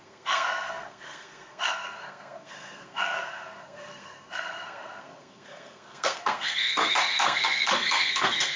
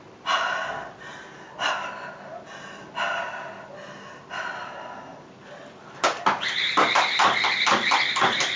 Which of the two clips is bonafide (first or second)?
second